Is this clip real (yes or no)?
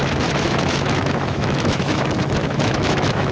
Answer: no